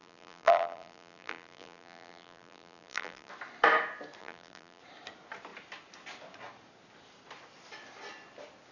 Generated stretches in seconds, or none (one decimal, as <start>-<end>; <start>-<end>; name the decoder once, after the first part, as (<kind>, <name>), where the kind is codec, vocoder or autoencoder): 0.0-3.3 (vocoder, BigVGAN v2); 4.2-4.8